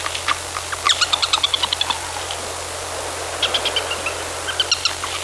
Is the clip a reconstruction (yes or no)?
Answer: no